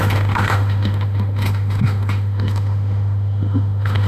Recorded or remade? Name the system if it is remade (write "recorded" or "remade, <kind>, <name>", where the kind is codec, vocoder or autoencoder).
remade, autoencoder, DAC-VAE